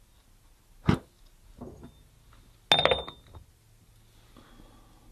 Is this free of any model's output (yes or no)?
yes